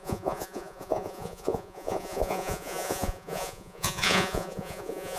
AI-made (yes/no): yes